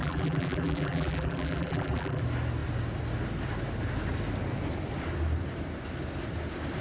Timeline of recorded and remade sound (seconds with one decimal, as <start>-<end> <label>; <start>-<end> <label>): 0.0-2.2 remade; 2.2-6.8 recorded